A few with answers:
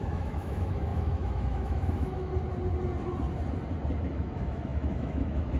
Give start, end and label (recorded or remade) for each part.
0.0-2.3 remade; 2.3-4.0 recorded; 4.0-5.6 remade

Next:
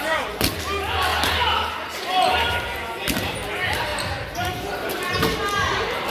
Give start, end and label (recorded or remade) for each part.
0.0-6.1 recorded

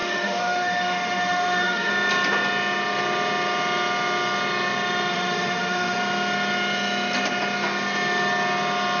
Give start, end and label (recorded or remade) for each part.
0.0-1.9 remade; 1.9-5.1 recorded; 5.1-6.0 remade; 6.0-9.0 recorded

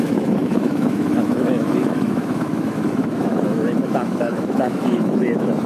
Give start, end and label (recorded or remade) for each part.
0.0-5.7 remade

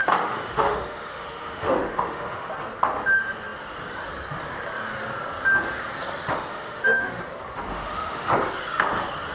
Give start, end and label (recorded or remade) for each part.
0.0-2.5 remade; 2.5-6.5 recorded; 6.5-7.2 remade; 7.2-7.7 recorded; 7.7-8.3 remade; 8.3-9.3 recorded